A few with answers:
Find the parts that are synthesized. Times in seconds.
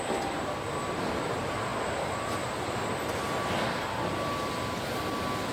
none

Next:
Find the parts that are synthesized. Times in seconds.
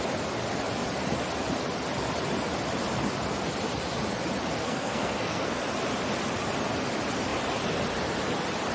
4.6-5.6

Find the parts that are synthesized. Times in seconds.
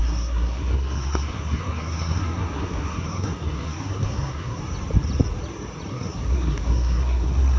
0.0-4.6; 5.9-7.6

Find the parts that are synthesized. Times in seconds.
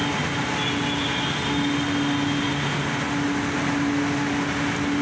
none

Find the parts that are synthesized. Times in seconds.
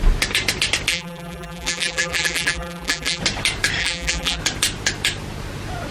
0.9-3.2; 3.8-4.4